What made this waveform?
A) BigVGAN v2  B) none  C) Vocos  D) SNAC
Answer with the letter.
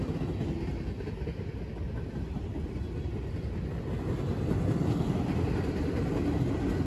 B